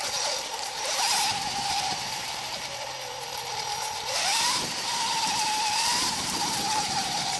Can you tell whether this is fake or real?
fake